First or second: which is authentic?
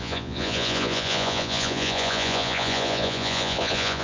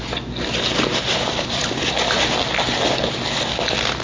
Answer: second